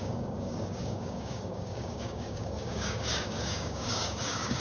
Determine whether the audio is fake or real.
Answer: fake